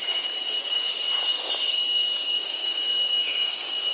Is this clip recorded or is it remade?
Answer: remade